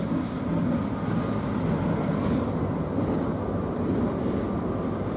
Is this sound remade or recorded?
recorded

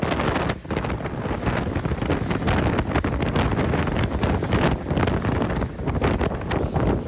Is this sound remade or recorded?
recorded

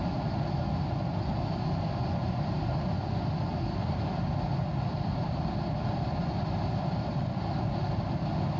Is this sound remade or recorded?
recorded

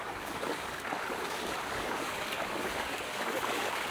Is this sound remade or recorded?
remade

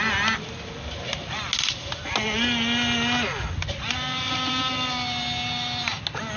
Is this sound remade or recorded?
recorded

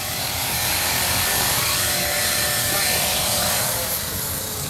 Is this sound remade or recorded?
remade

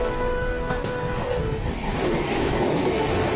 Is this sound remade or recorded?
remade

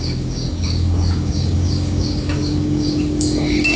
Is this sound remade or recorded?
remade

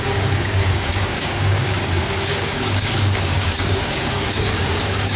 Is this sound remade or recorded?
remade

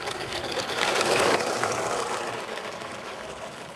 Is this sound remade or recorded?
remade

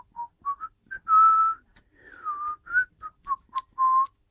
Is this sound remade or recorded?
recorded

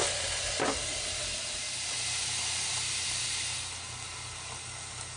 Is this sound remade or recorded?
recorded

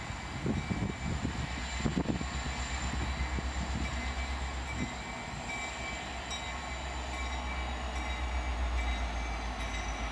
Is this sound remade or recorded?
recorded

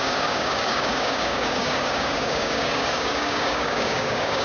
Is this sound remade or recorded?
remade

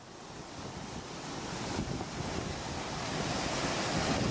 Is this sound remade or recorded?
recorded